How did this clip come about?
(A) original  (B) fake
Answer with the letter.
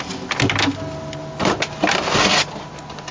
A